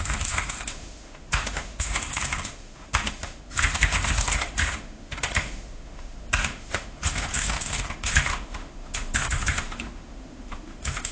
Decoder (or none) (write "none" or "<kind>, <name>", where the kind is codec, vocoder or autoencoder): autoencoder, DAC-VAE